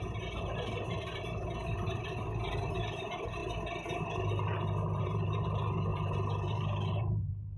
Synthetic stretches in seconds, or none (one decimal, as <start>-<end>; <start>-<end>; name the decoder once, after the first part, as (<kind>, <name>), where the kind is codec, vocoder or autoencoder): 0.0-3.4 (vocoder, BigVGAN v2); 5.0-7.6

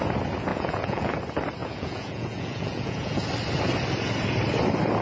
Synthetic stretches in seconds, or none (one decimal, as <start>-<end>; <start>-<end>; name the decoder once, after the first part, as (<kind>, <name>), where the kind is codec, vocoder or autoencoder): 0.5-1.2 (vocoder, Vocos); 1.6-3.3

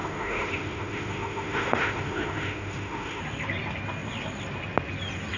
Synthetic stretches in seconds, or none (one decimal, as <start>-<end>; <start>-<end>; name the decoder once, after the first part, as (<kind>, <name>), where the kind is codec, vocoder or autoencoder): 0.0-3.2 (autoencoder, DAC-VAE)

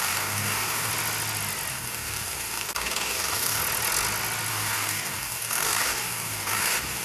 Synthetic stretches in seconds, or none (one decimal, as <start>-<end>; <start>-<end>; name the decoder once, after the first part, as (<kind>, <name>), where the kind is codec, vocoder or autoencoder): 0.0-0.9 (codec, DAC); 1.7-3.6; 4.5-7.0